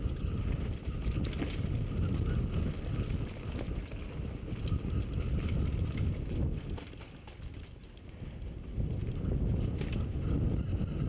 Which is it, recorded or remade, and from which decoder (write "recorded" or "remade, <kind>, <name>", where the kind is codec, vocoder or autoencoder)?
recorded